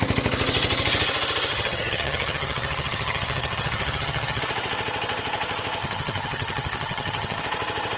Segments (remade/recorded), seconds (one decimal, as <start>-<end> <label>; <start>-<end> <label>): 0.0-1.5 recorded; 1.5-4.4 remade; 4.4-5.8 recorded; 5.8-7.4 remade; 7.4-8.0 recorded